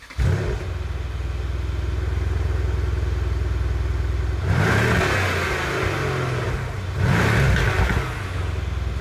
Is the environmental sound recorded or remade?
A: recorded